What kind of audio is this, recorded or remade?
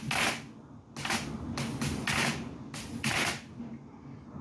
recorded